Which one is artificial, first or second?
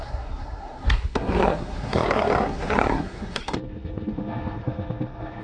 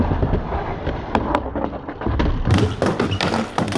first